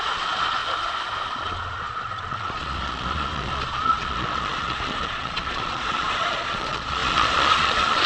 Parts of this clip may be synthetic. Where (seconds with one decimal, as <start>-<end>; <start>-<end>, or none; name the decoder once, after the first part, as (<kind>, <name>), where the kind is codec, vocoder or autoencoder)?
0.0-0.6 (vocoder, Vocos); 1.3-8.1